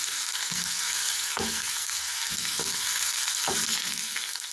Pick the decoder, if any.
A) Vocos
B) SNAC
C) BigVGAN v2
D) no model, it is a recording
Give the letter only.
B